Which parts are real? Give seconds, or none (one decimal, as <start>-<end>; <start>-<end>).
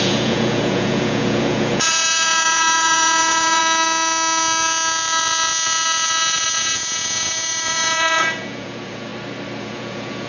3.6-6.6; 9.1-9.6